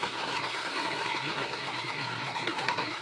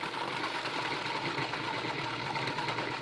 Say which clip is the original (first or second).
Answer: second